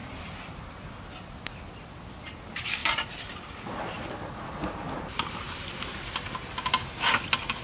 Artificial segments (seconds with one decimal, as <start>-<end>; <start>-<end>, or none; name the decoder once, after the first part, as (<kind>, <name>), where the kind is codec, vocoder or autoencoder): none